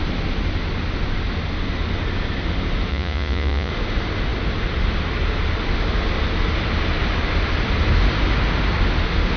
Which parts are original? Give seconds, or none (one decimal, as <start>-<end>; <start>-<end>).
0.0-2.9; 3.7-9.4